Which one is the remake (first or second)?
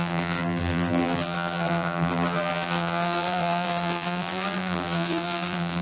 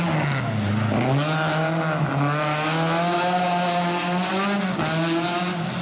first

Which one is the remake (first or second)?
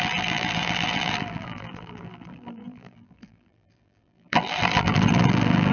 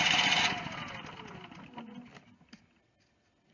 first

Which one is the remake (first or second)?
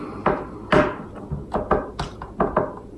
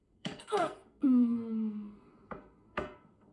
second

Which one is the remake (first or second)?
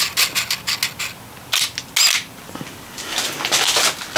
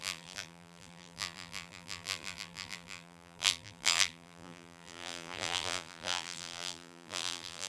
second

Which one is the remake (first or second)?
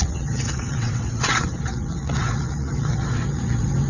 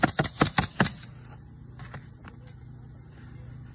first